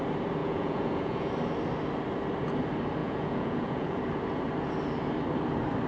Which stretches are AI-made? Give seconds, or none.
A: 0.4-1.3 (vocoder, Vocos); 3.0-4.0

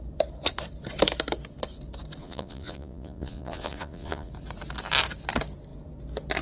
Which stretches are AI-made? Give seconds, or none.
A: 2.2-4.3 (vocoder, Vocos)

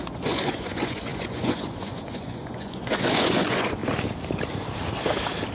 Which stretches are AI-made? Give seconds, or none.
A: 0.0-3.8 (vocoder, Vocos)

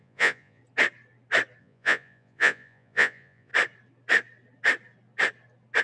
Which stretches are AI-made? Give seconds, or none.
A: 0.0-0.6 (vocoder, Vocos); 1.6-3.5

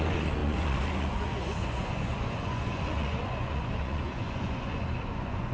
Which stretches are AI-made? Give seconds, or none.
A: 0.0-5.5 (vocoder, Vocos)

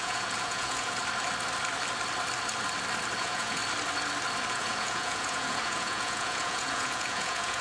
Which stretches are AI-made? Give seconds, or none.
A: 0.0-1.0 (vocoder, Vocos); 3.2-3.6; 4.5-7.6

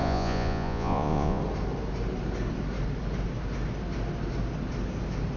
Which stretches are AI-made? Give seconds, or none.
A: 0.0-1.4 (vocoder, Vocos)